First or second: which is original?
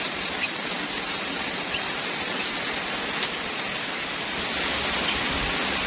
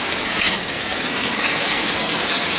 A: first